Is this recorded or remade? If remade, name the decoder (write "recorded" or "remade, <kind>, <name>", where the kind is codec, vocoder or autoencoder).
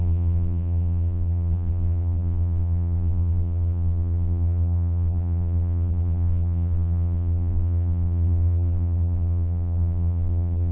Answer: remade, vocoder, BigVGAN v2